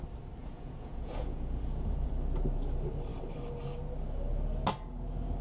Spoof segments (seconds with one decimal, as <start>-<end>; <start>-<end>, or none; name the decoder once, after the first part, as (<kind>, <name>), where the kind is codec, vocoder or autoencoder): 0.4-2.1 (vocoder, Vocos)